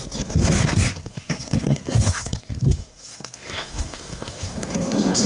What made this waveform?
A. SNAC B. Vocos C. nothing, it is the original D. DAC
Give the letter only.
A